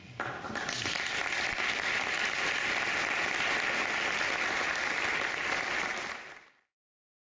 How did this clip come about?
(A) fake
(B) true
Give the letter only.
B